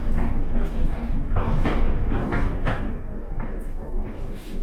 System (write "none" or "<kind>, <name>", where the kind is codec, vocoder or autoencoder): codec, DAC